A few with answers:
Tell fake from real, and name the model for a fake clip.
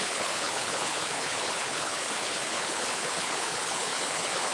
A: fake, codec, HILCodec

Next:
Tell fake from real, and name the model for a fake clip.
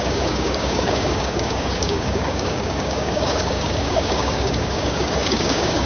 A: fake, codec, DAC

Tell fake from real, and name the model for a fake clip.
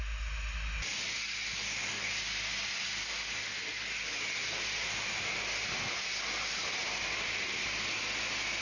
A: real